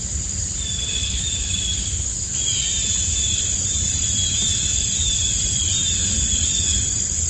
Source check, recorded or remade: remade